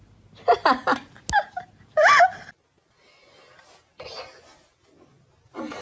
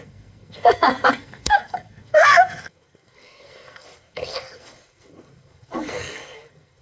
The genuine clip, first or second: first